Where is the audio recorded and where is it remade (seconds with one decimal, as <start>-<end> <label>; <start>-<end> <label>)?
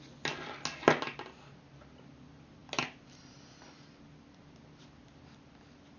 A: 0.0-6.0 recorded